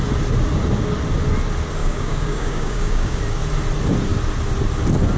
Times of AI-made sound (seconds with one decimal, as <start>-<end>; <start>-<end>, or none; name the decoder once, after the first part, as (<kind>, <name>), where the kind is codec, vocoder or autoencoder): 1.8-3.2 (codec, DAC)